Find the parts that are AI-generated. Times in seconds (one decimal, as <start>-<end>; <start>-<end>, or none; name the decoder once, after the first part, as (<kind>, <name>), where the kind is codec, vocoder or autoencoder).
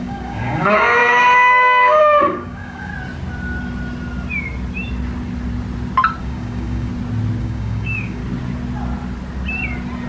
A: 0.0-2.9 (codec, DAC); 6.2-6.9; 7.4-8.2